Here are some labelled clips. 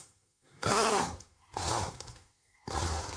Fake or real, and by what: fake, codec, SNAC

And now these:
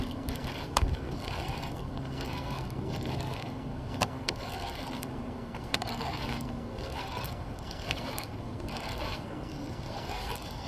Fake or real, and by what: fake, codec, SNAC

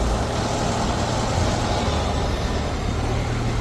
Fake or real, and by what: real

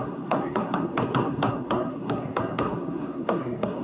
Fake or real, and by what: fake, codec, SNAC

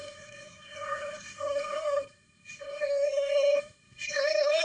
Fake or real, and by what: fake, codec, SNAC